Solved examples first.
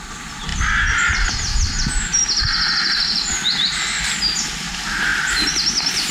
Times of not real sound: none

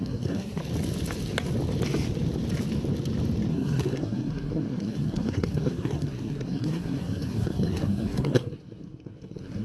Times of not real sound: 0.0-0.6 (codec, SNAC); 3.5-9.6

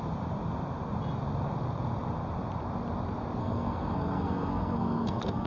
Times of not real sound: 3.4-5.5 (codec, SNAC)

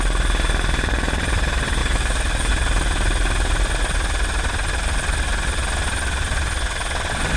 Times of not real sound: 1.8-2.5 (autoencoder, DAC-VAE)